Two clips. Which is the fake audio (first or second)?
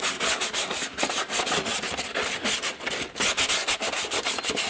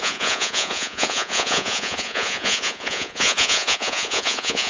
second